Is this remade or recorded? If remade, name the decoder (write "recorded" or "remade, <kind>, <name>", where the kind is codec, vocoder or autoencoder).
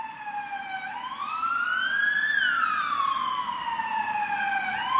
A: remade, vocoder, BigVGAN v2